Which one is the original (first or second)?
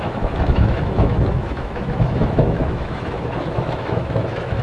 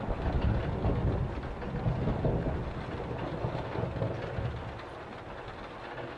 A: second